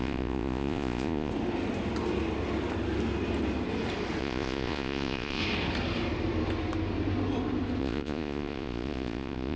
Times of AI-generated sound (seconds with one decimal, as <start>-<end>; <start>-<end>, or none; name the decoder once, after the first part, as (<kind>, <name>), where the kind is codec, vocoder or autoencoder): 0.0-1.3 (vocoder, Vocos); 4.2-5.4; 7.8-9.6